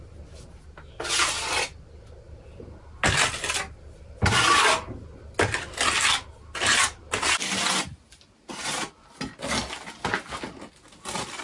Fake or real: real